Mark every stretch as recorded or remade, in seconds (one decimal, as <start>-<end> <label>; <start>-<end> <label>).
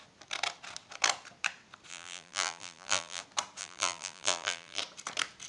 0.0-1.9 recorded; 1.9-3.2 remade; 3.2-3.6 recorded; 3.6-4.8 remade; 4.8-5.5 recorded